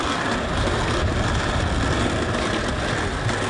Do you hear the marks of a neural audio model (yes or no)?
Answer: no